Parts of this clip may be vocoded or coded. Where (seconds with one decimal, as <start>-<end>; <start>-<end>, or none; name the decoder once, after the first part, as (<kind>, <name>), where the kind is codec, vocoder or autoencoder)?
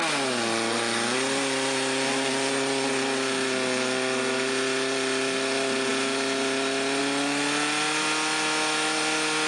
none